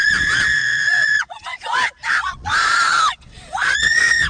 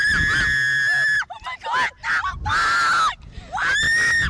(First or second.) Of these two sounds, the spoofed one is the first